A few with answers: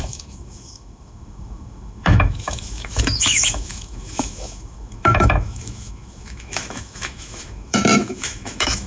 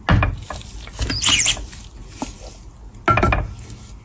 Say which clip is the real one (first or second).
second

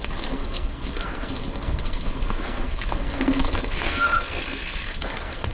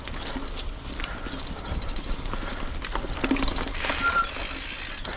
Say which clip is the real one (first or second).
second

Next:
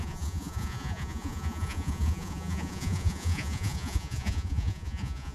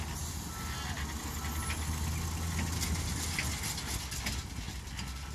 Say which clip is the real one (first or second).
second